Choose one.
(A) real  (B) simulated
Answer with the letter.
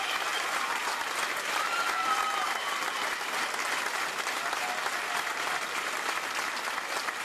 A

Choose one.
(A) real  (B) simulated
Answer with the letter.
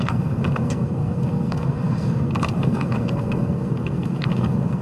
B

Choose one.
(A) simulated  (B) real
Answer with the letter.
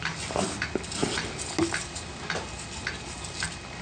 B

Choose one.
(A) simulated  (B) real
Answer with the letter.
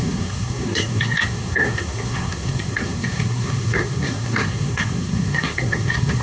A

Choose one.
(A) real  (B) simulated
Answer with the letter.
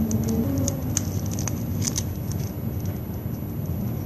A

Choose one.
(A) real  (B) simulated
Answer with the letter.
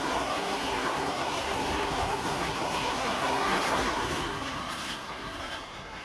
B